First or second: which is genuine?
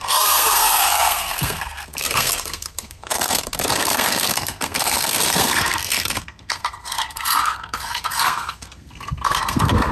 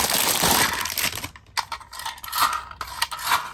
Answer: second